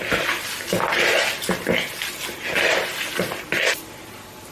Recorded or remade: recorded